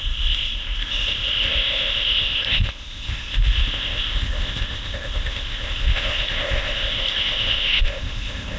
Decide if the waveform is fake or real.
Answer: fake